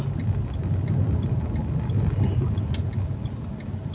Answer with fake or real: real